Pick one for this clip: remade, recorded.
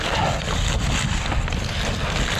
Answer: recorded